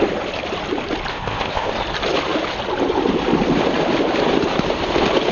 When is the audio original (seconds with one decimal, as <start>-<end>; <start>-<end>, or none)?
0.0-1.1; 1.7-5.3